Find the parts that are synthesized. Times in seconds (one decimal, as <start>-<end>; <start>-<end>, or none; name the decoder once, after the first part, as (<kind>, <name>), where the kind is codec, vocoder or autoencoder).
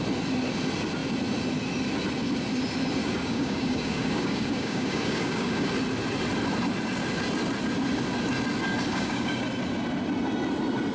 3.0-5.7 (codec, DAC); 8.9-9.4